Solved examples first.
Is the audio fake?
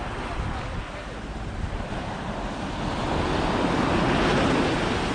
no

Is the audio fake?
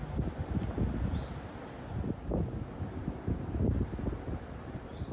no